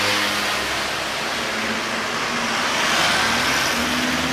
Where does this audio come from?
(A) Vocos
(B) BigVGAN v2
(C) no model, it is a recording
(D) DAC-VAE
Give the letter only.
C